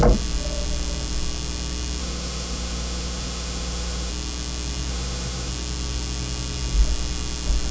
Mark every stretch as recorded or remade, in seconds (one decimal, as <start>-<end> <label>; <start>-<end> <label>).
0.0-2.0 recorded; 2.0-4.1 remade; 4.1-4.9 recorded; 4.9-5.5 remade; 5.5-7.7 recorded